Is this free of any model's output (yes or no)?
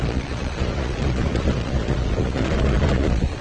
no